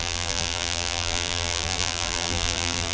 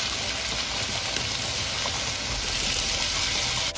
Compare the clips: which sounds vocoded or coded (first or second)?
first